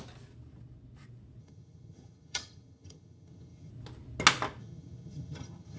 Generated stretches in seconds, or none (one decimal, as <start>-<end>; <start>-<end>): 1.4-3.7; 4.6-5.8